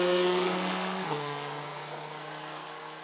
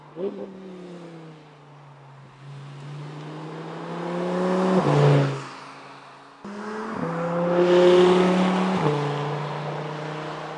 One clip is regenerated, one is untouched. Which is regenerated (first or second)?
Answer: first